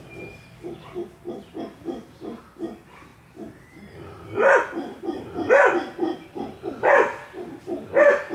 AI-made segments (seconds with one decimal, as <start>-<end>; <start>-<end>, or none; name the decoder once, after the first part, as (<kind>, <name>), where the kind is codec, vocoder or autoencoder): none